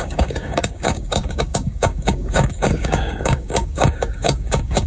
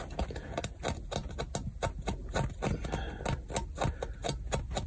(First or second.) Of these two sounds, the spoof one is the first